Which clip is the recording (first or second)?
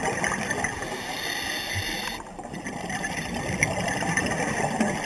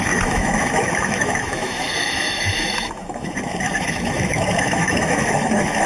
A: first